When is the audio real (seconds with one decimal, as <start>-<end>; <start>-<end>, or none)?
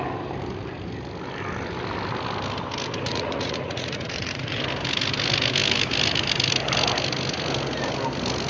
0.0-3.1; 4.6-8.5